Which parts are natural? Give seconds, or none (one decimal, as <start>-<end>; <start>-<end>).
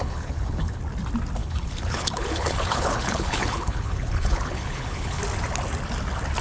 0.8-1.4; 5.2-6.4